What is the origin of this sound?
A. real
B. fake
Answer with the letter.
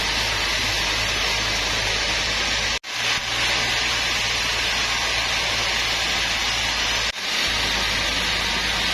A